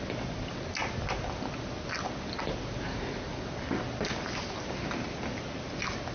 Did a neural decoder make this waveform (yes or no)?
no